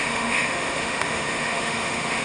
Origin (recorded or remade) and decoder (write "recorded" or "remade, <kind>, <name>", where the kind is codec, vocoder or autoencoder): remade, autoencoder, DAC-VAE